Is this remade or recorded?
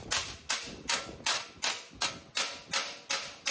recorded